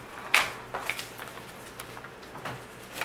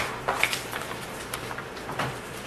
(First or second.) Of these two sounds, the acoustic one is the first